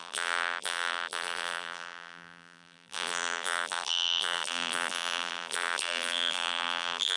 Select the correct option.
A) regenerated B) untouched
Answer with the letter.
A